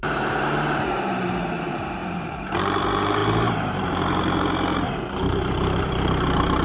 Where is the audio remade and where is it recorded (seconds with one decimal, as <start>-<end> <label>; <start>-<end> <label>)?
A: 0.0-6.6 remade